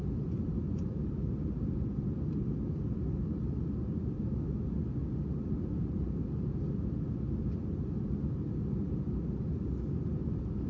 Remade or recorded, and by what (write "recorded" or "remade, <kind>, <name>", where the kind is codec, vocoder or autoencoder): recorded